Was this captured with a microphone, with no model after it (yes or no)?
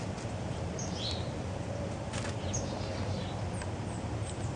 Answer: yes